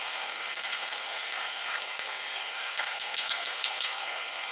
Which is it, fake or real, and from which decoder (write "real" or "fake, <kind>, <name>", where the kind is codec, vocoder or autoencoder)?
fake, codec, SNAC